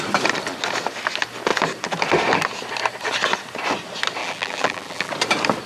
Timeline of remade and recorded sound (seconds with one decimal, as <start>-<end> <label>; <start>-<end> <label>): 0.0-4.2 recorded; 4.2-5.1 remade; 5.1-5.7 recorded